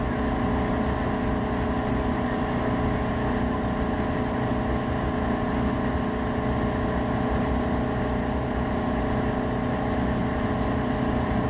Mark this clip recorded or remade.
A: recorded